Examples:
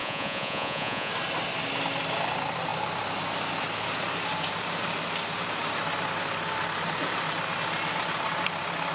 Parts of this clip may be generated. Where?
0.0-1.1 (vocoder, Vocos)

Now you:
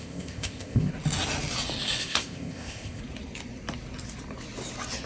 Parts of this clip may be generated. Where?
0.0-0.9 (codec, ZipCodec); 2.0-3.0

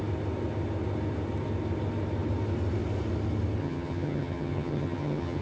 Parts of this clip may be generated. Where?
3.6-5.4 (vocoder, HiFi-GAN)

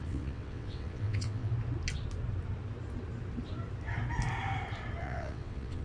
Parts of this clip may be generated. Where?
0.0-1.5 (vocoder, WaveNeXt); 5.0-5.8

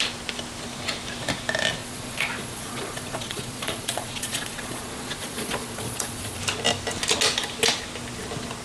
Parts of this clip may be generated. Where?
1.8-6.4 (vocoder, Vocos)